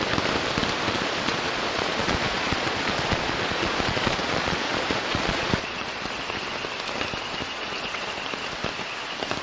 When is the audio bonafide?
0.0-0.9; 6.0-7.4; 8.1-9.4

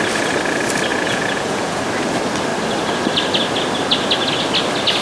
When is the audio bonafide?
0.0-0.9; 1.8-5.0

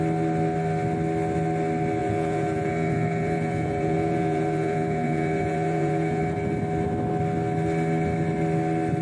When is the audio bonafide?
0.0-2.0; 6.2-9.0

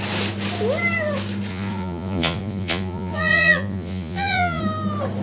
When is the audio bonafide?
0.0-1.5; 4.6-5.2